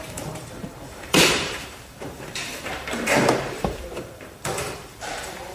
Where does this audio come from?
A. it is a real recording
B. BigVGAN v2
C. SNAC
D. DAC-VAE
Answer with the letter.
B